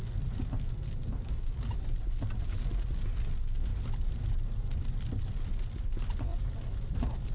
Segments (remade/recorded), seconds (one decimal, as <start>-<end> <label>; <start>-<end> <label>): 0.0-1.4 recorded; 1.4-2.1 remade; 2.1-3.7 recorded; 3.7-4.9 remade; 4.9-6.3 recorded; 6.3-7.3 remade